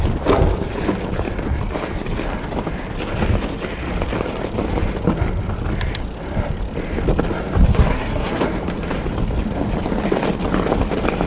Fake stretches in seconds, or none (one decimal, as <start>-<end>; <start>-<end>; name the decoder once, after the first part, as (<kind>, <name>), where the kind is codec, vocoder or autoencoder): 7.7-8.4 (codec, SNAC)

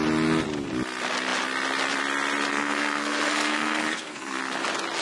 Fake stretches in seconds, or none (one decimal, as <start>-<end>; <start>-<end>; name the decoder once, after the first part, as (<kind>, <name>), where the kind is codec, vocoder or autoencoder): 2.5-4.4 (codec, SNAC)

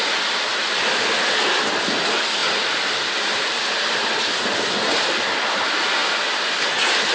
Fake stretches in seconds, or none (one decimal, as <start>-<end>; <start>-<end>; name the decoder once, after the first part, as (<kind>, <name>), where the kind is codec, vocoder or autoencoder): none

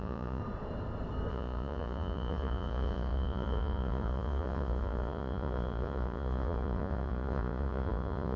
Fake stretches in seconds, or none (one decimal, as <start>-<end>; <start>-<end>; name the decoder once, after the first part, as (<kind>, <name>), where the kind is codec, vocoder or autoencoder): 0.0-0.4 (vocoder, Vocos); 1.3-8.4

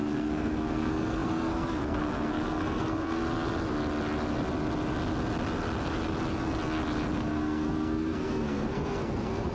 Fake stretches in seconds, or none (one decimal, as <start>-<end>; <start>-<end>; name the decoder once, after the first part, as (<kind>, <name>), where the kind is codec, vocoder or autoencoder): 0.0-3.2 (codec, SNAC); 7.2-9.5

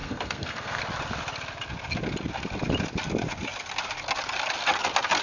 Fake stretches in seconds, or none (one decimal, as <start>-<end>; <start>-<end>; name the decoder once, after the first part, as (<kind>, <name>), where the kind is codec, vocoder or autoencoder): 0.0-0.8 (codec, SNAC)

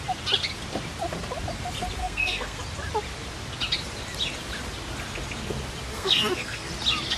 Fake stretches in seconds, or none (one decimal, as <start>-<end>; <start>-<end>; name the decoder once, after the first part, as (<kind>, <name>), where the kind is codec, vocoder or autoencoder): 2.0-2.6 (codec, SNAC); 5.9-6.7